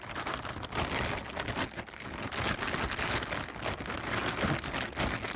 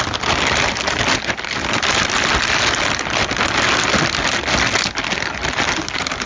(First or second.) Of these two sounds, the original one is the first